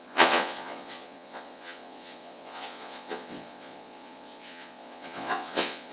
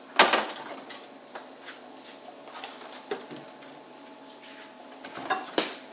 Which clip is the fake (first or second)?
first